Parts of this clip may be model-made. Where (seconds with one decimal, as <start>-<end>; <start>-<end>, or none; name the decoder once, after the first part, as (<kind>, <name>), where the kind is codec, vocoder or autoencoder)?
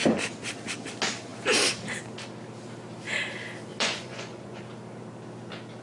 3.7-4.6 (vocoder, Vocos)